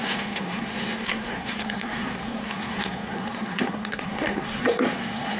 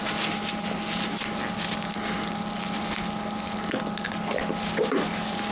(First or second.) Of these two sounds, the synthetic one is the first